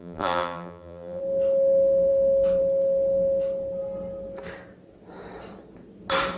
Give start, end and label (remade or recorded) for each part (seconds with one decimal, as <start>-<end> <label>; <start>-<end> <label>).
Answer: 0.0-1.2 remade; 1.2-6.4 recorded